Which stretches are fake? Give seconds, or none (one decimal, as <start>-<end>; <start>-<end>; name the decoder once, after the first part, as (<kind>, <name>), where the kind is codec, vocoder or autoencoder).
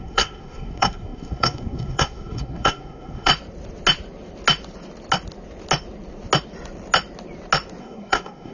0.0-3.3 (codec, SNAC); 7.8-8.5